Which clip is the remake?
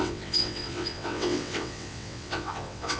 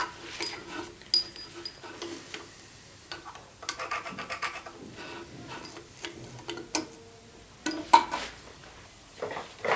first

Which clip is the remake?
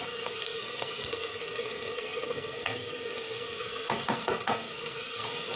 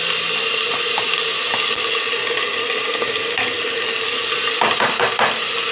first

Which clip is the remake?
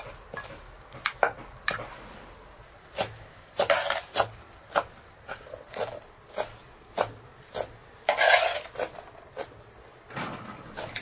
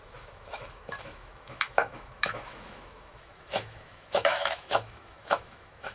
second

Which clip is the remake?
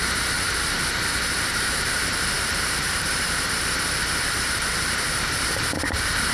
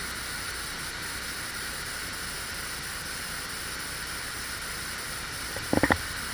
first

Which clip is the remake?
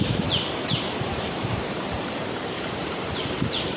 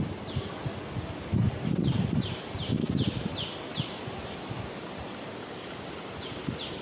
first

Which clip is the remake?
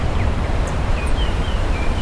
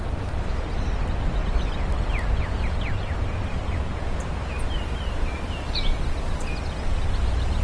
first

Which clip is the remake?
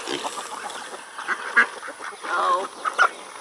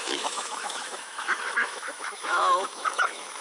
second